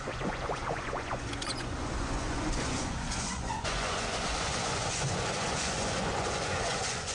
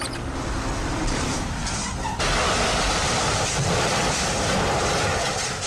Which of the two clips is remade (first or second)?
first